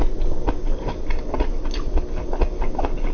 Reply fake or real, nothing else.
real